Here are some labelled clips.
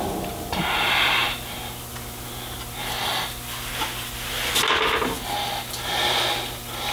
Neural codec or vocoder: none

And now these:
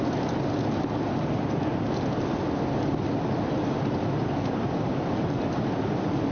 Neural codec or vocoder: none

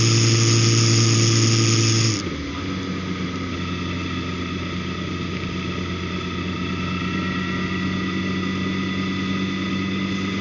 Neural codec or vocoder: none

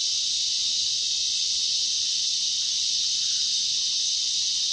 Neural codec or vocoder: none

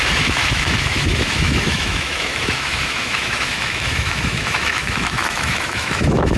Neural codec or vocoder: autoencoder, DAC-VAE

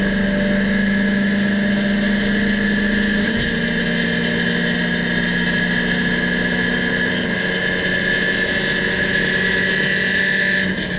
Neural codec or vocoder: none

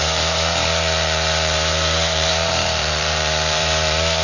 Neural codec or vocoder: vocoder, BigVGAN v2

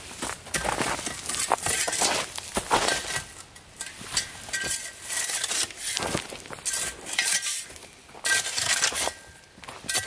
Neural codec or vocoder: none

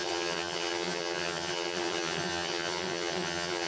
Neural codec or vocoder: vocoder, HiFi-GAN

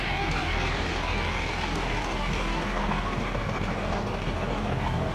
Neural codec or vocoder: codec, DAC